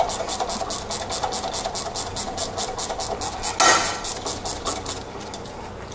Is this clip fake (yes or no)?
no